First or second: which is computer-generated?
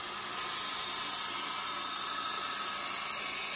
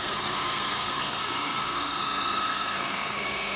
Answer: second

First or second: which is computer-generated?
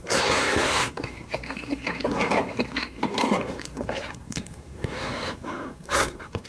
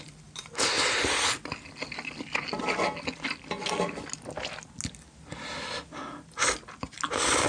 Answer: first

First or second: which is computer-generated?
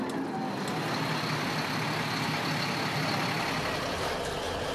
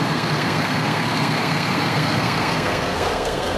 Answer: second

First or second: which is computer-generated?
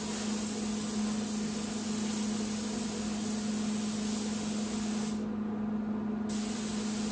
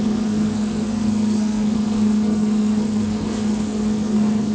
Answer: second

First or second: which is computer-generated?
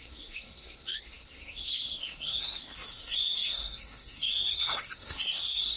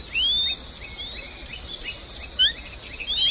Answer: first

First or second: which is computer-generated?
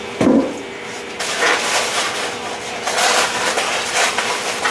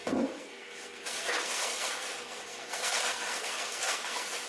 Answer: second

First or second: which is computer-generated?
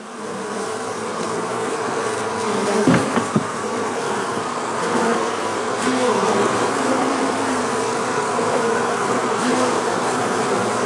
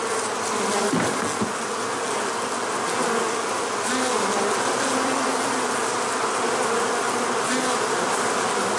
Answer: first